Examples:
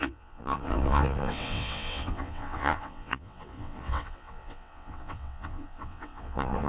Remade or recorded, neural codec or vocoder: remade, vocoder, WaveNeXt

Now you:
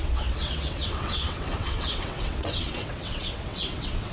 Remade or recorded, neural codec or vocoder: remade, vocoder, WaveNeXt